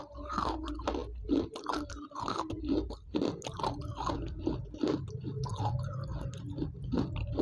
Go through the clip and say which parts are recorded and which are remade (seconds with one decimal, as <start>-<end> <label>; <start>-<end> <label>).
0.0-7.4 recorded